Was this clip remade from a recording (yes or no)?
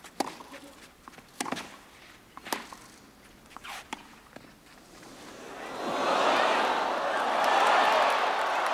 no